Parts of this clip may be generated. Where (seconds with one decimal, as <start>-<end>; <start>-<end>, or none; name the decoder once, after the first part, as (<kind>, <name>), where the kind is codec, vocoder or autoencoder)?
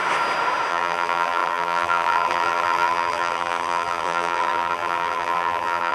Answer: 0.7-5.9 (vocoder, BigVGAN v2)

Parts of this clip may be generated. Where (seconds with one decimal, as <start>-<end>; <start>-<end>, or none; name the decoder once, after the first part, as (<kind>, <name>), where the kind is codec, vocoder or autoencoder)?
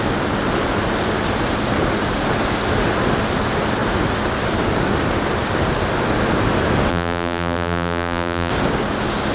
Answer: 6.9-8.5 (vocoder, BigVGAN v2)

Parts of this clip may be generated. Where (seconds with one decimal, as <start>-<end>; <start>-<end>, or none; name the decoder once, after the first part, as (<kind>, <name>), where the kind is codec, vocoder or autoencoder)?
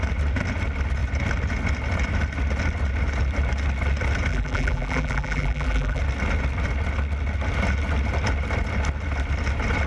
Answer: 4.3-6.0 (vocoder, BigVGAN v2)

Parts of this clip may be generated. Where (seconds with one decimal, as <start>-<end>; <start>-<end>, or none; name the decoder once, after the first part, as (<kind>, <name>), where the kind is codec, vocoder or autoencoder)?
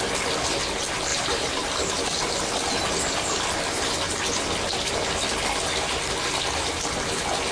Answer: 1.1-1.9 (vocoder, BigVGAN v2)